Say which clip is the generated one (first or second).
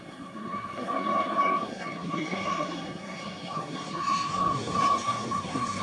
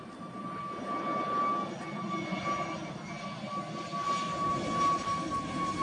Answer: first